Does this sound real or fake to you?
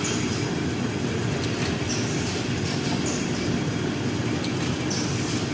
real